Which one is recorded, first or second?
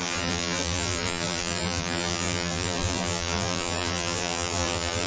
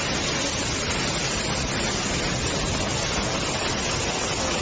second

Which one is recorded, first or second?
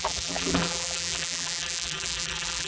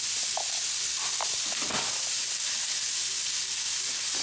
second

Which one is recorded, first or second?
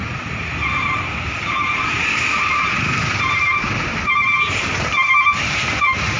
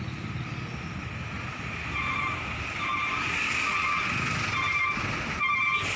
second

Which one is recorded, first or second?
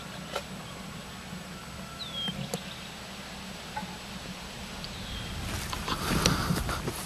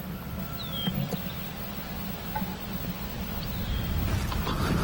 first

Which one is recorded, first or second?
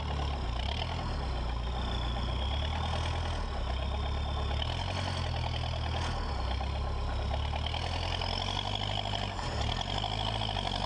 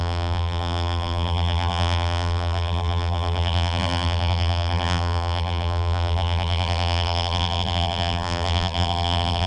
first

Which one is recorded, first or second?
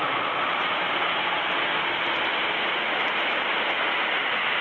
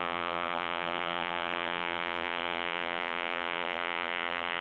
first